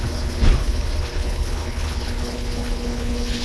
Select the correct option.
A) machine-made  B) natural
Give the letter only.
A